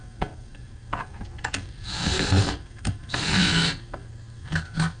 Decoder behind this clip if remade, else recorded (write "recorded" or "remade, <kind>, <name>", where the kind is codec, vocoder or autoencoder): remade, codec, SNAC